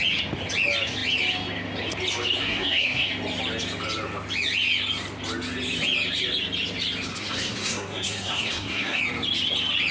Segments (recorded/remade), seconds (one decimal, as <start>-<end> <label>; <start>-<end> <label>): 0.0-2.4 recorded; 2.4-3.1 remade; 3.1-7.1 recorded; 7.1-9.0 remade; 9.0-9.9 recorded